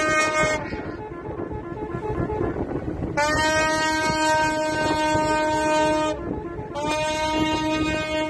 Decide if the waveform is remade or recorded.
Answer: recorded